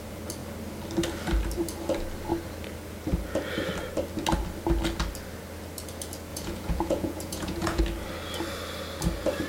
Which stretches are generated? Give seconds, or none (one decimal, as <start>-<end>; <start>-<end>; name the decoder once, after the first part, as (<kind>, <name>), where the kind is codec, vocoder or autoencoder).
6.3-7.8 (vocoder, Vocos)